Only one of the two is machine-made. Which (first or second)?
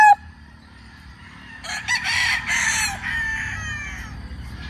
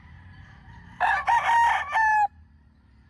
first